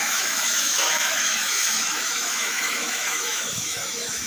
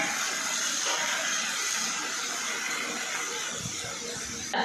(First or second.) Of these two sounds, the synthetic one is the first